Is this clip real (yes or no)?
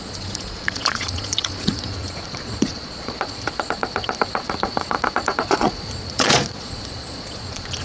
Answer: no